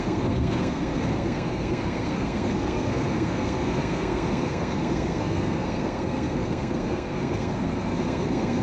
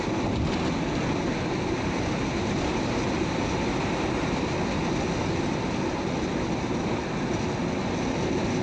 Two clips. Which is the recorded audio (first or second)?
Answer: second